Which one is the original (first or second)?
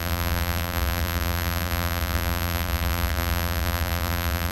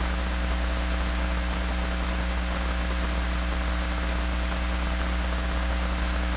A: second